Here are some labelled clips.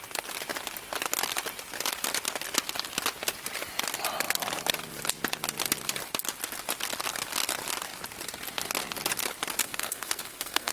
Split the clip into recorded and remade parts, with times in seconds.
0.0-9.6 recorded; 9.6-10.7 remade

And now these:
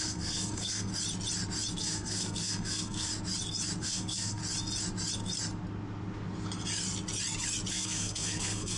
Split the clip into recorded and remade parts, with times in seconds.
0.0-0.9 remade; 0.9-1.8 recorded; 1.8-3.1 remade; 3.1-3.8 recorded; 3.8-4.4 remade; 4.4-7.7 recorded; 7.7-8.8 remade

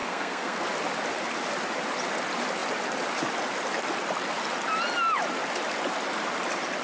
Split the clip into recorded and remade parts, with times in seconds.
0.0-0.6 remade; 0.6-6.8 recorded

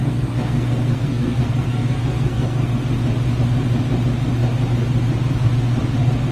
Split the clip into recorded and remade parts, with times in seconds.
0.0-2.8 remade; 2.8-6.3 recorded

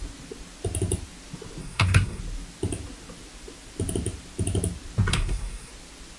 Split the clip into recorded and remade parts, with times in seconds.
0.0-1.6 recorded; 1.6-2.2 remade; 2.2-5.1 recorded; 5.1-5.7 remade; 5.7-6.2 recorded

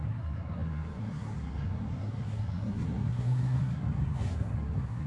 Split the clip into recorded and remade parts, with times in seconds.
0.0-5.1 remade

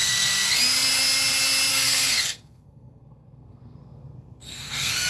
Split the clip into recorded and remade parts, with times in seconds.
0.0-0.6 remade; 0.6-1.7 recorded; 1.7-5.1 remade